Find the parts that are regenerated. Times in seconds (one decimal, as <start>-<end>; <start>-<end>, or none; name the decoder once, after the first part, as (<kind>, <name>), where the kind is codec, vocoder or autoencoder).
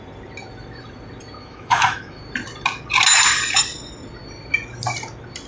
1.4-2.2 (autoencoder, DAC-VAE)